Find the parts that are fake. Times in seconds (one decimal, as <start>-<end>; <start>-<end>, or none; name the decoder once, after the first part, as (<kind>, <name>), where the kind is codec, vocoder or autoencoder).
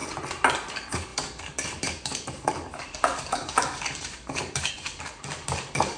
0.7-6.0 (codec, DAC)